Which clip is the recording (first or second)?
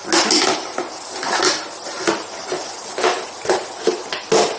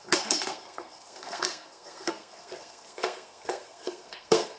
first